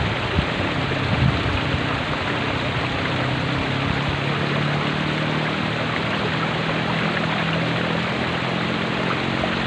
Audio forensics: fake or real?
real